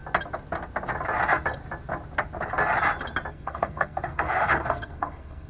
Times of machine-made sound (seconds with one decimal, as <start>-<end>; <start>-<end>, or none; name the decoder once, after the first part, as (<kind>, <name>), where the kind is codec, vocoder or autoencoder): 3.3-5.5 (codec, SNAC)